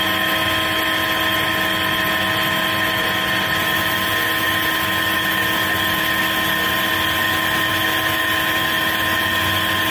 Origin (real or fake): real